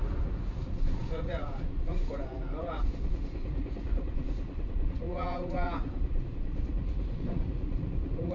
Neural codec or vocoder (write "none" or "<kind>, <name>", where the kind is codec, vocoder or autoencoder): vocoder, Vocos